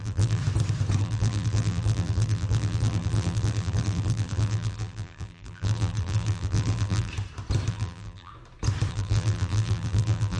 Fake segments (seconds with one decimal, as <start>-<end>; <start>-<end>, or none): 0.0-0.4; 1.0-7.1; 7.7-8.3; 8.9-10.4